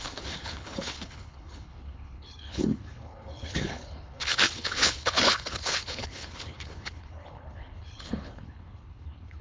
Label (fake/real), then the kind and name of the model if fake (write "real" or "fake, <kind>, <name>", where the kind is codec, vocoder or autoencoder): fake, codec, HILCodec